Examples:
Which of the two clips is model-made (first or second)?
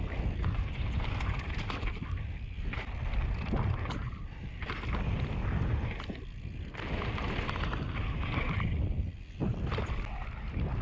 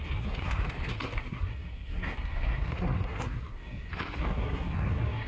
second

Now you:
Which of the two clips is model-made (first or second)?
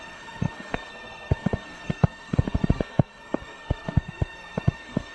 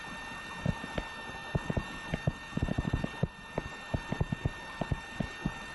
first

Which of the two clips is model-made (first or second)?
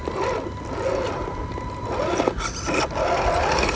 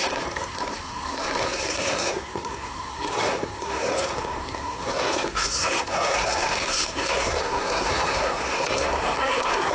second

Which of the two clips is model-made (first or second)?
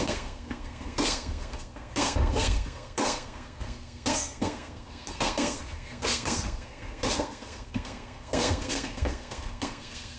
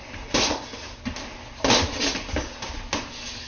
first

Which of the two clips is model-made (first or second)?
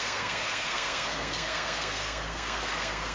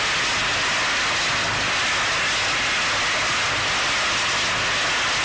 first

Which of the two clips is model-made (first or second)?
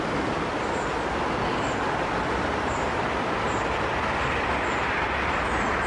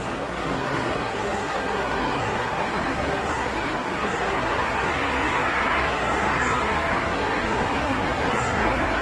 second